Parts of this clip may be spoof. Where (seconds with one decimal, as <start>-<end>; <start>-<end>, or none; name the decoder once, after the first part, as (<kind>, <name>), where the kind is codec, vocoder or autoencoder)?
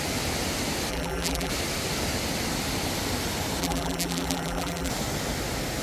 0.9-1.5 (vocoder, BigVGAN v2); 3.6-4.9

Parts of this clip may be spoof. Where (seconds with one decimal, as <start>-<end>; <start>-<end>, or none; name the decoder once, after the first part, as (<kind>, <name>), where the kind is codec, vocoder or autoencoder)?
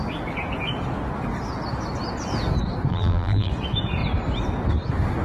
2.9-3.5 (vocoder, BigVGAN v2)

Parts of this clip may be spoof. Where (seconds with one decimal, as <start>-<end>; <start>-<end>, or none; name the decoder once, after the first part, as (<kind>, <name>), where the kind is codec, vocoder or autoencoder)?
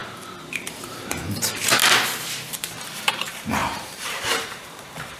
0.6-1.8 (vocoder, BigVGAN v2); 2.5-5.2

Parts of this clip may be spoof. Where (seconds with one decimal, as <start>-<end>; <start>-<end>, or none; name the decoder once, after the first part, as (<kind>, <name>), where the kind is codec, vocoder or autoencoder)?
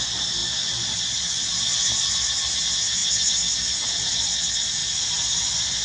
0.4-2.6 (vocoder, BigVGAN v2); 4.8-5.8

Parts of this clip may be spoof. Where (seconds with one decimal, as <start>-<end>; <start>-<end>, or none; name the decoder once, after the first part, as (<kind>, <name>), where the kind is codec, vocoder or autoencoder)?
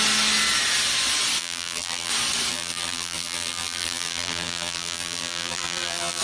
1.4-2.1 (vocoder, BigVGAN v2); 2.5-6.2